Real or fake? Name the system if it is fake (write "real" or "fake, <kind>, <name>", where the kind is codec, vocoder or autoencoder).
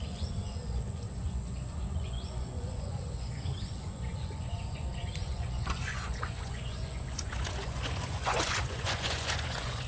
fake, vocoder, Vocos